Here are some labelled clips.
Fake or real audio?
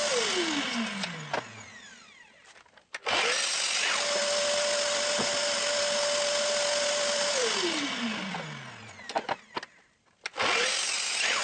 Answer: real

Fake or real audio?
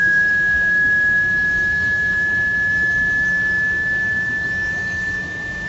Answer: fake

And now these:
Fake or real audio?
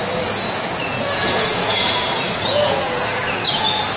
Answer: fake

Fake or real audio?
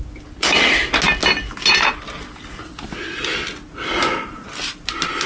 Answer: real